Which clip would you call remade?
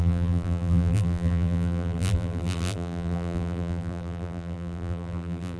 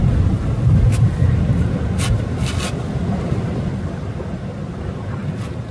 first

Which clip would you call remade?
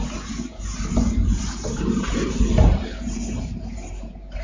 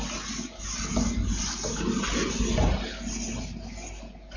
first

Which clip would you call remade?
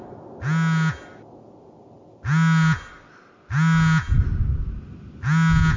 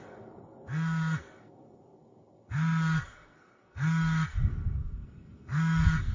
second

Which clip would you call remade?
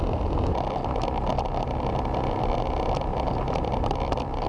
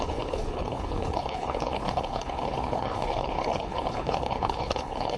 second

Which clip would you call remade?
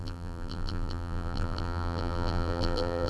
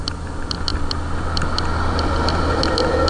first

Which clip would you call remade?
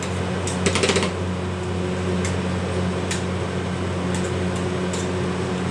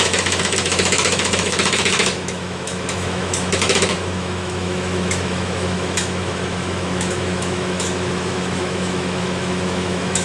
second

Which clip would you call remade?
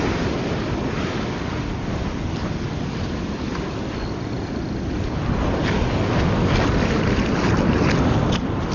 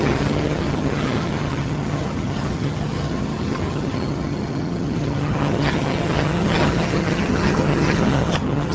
second